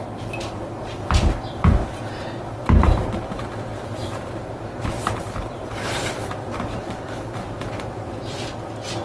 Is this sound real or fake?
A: fake